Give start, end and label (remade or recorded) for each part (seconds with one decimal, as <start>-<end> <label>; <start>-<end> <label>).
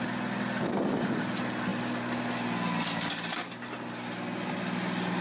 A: 0.0-5.2 recorded